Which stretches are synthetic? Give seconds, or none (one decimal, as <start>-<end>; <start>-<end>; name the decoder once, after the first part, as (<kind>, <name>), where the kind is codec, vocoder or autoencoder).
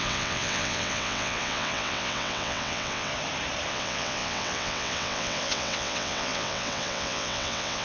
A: 0.0-3.1 (vocoder, WaveNeXt); 3.7-7.8